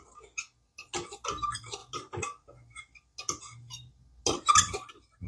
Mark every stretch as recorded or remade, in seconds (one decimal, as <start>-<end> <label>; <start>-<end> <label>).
0.0-5.3 recorded